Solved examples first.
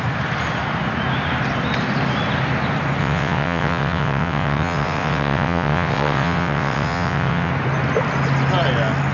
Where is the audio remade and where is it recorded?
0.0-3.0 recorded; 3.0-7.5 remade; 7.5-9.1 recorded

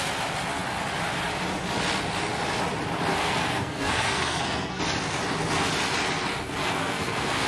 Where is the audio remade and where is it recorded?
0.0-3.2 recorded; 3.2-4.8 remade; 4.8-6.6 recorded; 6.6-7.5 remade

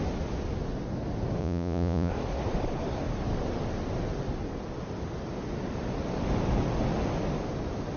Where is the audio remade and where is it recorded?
0.0-1.4 recorded; 1.4-2.1 remade; 2.1-8.0 recorded